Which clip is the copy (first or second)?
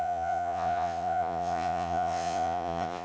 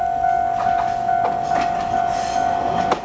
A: first